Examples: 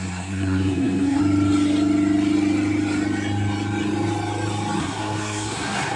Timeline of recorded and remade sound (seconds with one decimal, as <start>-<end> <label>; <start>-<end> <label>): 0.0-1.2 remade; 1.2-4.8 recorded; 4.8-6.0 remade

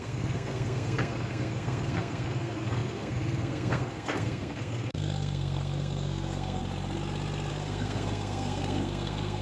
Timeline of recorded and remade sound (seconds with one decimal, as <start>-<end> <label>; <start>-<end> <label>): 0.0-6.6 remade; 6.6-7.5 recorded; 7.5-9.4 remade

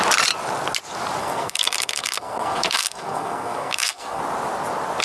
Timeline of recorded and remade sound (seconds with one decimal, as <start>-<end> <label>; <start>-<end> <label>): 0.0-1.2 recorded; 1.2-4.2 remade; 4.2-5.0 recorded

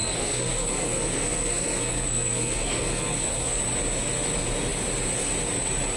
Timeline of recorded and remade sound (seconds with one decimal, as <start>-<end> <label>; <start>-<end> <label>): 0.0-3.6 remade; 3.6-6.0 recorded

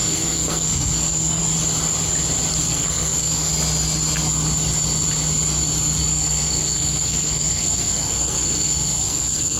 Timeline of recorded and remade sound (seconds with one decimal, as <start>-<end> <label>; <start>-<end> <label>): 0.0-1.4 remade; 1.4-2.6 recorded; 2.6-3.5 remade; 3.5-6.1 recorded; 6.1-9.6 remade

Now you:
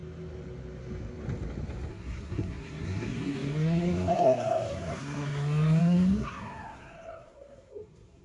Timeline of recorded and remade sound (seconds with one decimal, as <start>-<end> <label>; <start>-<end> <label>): 0.0-1.9 recorded; 1.9-8.2 remade